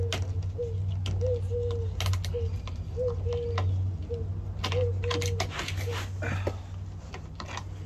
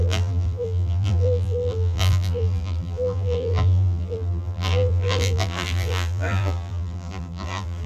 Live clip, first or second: first